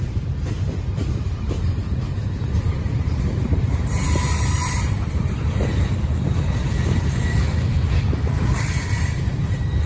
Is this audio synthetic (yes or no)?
yes